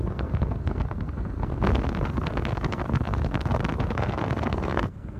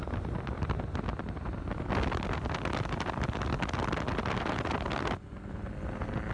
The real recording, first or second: second